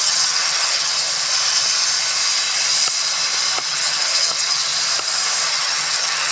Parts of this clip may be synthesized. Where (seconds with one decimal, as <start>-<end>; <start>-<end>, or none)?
0.0-0.9; 3.7-4.7; 5.5-6.3

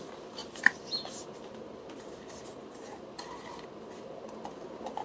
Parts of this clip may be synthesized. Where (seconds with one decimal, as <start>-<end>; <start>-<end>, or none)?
none

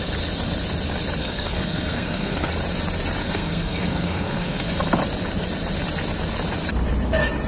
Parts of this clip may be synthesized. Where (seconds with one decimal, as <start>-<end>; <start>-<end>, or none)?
1.2-2.5; 3.2-4.7